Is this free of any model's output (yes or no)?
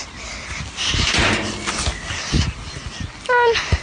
yes